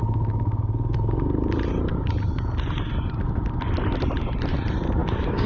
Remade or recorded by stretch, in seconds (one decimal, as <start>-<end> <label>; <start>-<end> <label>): 0.0-0.6 remade; 0.6-5.0 recorded; 5.0-5.5 remade